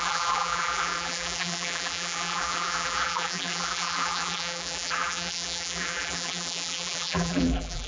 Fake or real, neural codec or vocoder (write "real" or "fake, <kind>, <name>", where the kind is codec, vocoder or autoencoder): fake, vocoder, BigVGAN v2